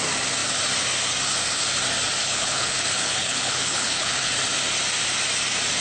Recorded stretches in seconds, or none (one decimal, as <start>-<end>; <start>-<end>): 0.0-2.2; 4.3-5.8